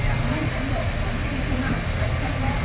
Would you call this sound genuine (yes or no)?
yes